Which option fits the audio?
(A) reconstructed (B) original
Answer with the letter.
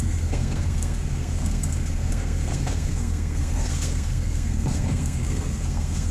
A